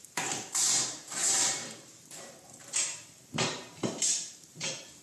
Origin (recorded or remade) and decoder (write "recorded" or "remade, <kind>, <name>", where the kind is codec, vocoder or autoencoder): remade, vocoder, BigVGAN v2